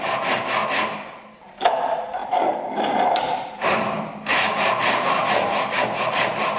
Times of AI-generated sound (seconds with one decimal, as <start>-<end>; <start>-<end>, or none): 0.6-1.5; 2.2-6.0